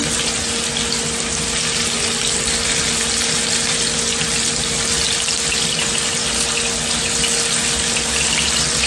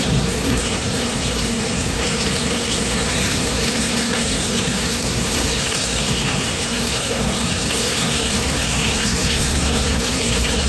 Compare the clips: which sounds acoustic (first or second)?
first